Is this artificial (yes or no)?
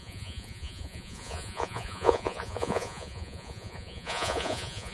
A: yes